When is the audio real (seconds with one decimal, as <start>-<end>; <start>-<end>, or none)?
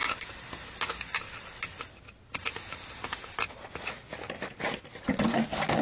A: 0.0-5.8